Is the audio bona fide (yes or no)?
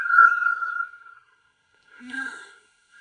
no